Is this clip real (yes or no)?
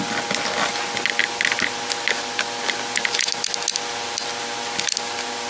yes